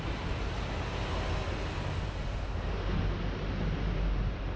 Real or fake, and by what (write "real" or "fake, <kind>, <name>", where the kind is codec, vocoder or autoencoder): real